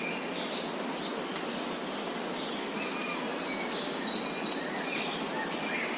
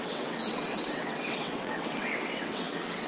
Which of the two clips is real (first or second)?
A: first